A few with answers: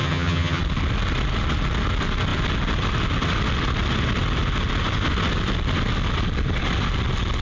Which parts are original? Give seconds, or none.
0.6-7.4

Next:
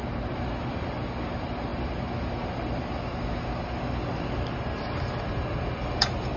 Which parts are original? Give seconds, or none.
0.0-6.4